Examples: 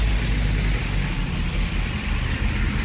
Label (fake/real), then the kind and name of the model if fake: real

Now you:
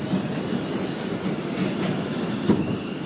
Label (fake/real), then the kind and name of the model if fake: real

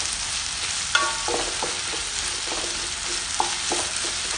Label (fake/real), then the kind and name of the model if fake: real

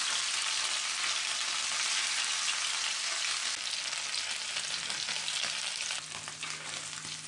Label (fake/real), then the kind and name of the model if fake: real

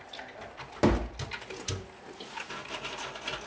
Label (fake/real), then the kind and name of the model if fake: real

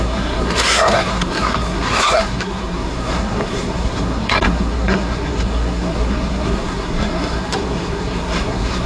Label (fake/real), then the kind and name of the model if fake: fake, codec, SNAC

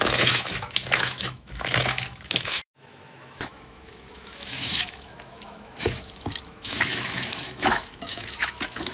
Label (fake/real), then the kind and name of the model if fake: fake, autoencoder, DAC-VAE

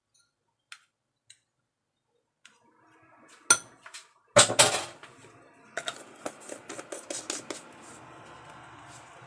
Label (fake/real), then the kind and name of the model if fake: real